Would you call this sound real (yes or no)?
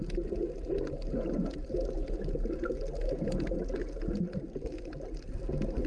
yes